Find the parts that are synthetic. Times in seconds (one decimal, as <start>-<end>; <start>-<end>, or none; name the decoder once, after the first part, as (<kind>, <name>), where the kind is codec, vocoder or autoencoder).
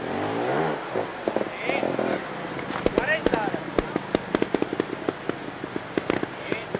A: none